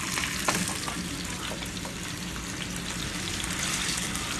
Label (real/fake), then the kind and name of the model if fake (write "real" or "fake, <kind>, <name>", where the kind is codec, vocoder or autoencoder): real